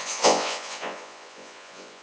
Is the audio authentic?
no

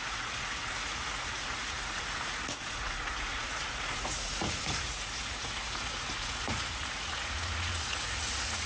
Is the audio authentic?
no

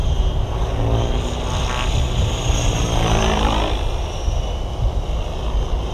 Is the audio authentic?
yes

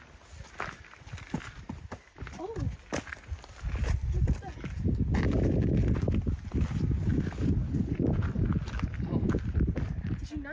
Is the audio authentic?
yes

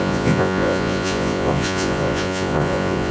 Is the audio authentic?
no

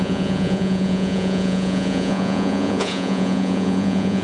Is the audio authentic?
no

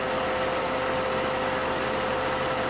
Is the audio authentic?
yes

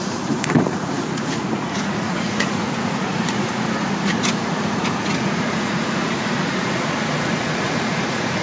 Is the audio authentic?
no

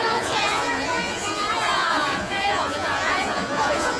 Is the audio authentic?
no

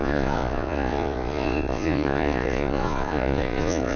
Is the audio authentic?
no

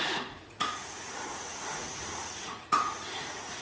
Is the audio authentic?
no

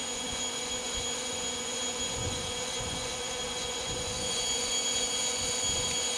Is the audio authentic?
no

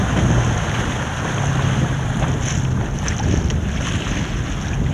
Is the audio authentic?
yes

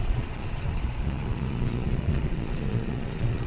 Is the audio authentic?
no